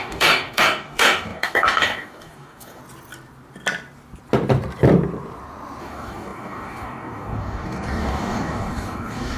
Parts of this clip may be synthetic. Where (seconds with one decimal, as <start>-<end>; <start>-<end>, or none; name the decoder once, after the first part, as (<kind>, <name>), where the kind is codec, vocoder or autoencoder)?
0.0-2.8 (codec, DAC); 5.8-9.4